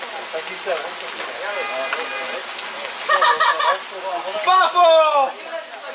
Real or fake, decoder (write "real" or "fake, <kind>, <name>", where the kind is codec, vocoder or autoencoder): real